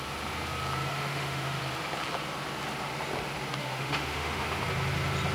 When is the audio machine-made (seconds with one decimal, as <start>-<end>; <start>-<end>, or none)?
0.9-1.6; 3.6-4.6

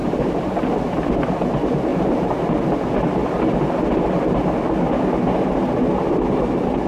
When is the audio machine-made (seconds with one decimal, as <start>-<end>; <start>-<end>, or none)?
0.0-0.7; 1.9-2.6

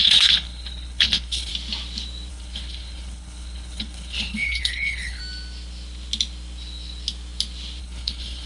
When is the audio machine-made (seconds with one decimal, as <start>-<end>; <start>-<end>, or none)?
0.0-1.5; 2.3-5.2; 7.8-8.5

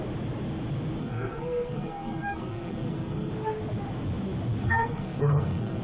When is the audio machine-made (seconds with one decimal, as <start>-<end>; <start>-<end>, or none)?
1.0-3.3; 4.6-5.8